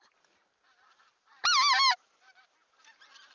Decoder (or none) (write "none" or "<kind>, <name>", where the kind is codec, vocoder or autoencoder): none